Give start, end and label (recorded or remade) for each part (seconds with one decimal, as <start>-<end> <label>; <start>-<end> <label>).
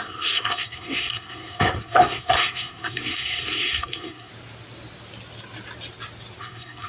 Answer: 0.0-4.3 remade; 4.3-6.4 recorded; 6.4-6.9 remade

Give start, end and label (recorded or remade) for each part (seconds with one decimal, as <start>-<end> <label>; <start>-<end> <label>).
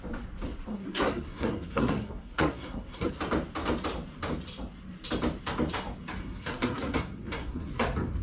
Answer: 0.0-0.7 recorded; 0.7-3.1 remade; 3.1-6.2 recorded; 6.2-7.7 remade; 7.7-8.2 recorded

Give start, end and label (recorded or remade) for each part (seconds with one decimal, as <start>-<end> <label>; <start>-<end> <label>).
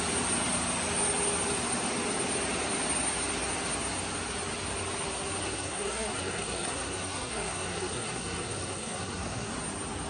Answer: 0.0-5.4 recorded; 5.4-9.5 remade; 9.5-10.1 recorded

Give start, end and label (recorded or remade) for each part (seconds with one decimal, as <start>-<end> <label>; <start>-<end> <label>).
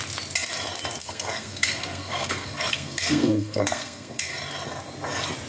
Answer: 0.0-1.0 recorded; 1.0-4.3 remade; 4.3-5.5 recorded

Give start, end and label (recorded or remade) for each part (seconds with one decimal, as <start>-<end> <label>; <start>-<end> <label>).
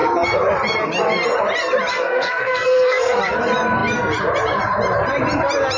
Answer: 0.0-1.9 recorded; 1.9-3.2 remade; 3.2-5.8 recorded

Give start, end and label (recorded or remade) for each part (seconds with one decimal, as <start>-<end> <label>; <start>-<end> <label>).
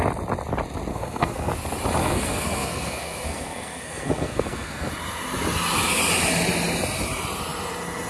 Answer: 0.0-0.9 recorded; 0.9-1.5 remade; 1.5-2.0 recorded; 2.0-4.9 remade; 4.9-8.1 recorded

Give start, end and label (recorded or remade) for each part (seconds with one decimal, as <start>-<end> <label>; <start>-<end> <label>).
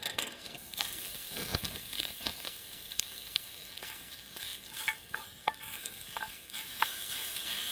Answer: 0.0-7.7 remade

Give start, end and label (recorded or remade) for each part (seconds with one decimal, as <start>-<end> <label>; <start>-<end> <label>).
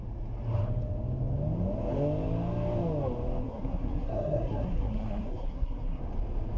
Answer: 0.0-3.4 recorded; 3.4-6.0 remade; 6.0-6.6 recorded